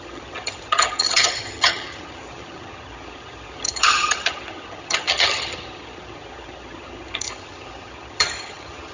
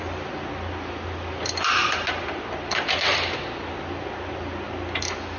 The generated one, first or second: first